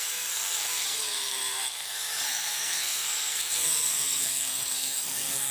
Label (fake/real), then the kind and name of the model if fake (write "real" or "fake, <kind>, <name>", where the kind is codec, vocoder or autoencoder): fake, codec, SNAC